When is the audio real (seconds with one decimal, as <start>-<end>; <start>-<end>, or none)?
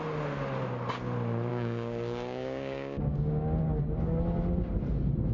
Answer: 0.0-1.5; 3.6-5.3